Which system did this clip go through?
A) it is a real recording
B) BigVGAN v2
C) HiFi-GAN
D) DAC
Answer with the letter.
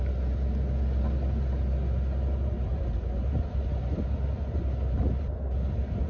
A